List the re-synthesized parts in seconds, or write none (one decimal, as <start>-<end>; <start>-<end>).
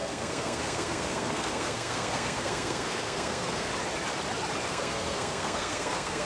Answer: 0.0-3.7; 4.7-6.2